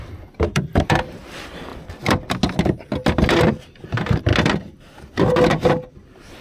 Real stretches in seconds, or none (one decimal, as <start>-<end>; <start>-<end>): 1.7-3.5; 4.3-5.9